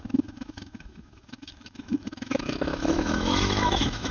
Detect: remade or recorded remade